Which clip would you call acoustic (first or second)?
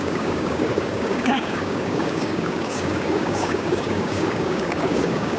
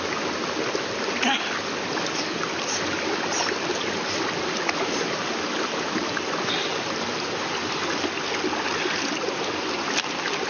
second